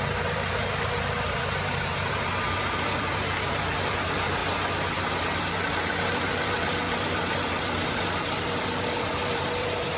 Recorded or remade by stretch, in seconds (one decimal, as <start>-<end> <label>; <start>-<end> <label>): 0.0-4.4 remade; 4.4-5.2 recorded; 5.2-10.0 remade